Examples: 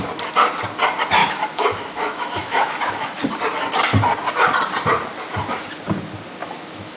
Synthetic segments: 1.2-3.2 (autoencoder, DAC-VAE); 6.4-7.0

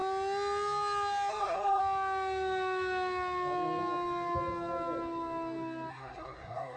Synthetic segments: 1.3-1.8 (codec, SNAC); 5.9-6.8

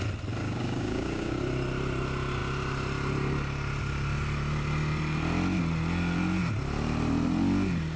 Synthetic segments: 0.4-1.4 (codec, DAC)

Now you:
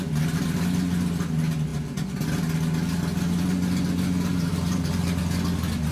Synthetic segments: 4.3-5.2 (vocoder, BigVGAN v2)